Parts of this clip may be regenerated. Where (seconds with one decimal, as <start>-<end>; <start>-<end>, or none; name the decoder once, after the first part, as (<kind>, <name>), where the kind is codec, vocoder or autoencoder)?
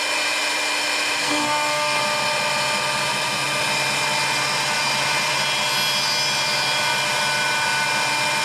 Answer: 1.2-2.0 (codec, SNAC)